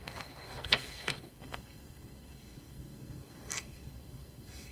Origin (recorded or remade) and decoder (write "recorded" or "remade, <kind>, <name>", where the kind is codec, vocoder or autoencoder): remade, codec, SNAC